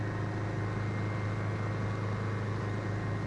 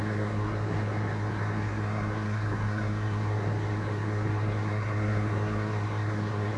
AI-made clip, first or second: second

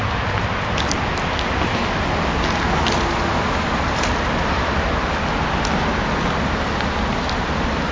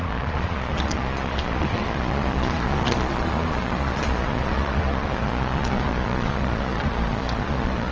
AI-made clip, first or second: second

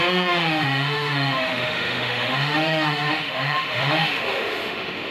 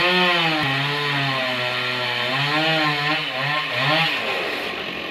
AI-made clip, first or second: first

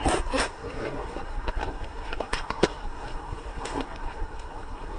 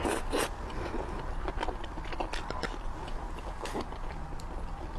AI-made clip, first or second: first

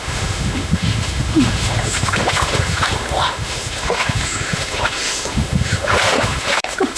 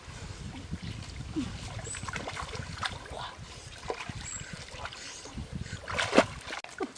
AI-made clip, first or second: first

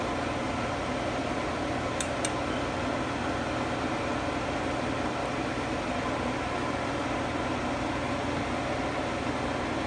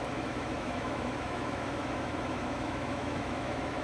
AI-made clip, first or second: second